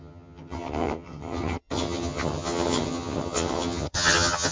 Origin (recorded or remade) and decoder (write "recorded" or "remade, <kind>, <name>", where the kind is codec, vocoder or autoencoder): remade, vocoder, HiFi-GAN